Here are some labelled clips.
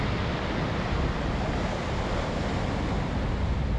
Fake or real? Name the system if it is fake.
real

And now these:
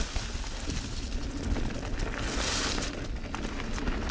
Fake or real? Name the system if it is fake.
real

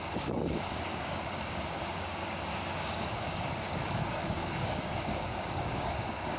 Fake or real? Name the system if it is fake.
fake, codec, DAC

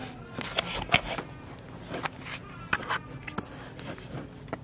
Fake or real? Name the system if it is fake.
real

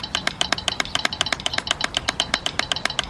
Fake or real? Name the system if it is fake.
fake, vocoder, BigVGAN v2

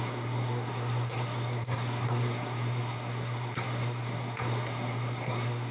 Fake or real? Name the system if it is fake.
fake, codec, SNAC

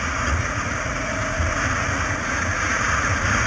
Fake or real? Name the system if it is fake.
fake, vocoder, Vocos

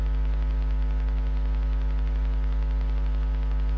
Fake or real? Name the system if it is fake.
real